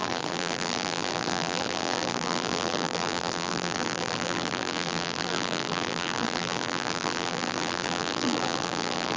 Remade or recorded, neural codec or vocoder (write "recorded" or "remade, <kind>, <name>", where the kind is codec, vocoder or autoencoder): remade, vocoder, BigVGAN v2